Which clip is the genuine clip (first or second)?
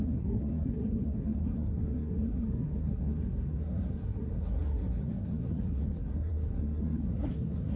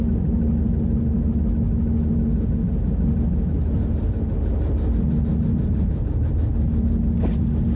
second